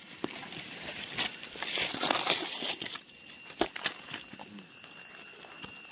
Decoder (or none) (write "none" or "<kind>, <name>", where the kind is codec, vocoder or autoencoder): none